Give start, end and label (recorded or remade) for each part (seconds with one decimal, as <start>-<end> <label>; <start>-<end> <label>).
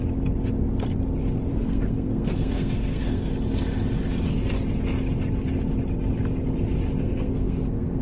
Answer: 0.0-1.5 recorded; 1.5-3.3 remade; 3.3-7.0 recorded; 7.0-8.0 remade